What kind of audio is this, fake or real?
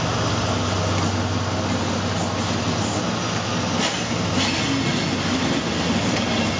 real